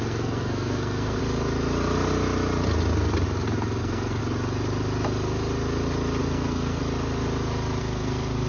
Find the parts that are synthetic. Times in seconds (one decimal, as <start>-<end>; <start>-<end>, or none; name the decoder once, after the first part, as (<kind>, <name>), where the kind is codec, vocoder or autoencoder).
0.0-1.2 (codec, SNAC); 3.8-4.2; 6.2-6.8; 7.8-8.5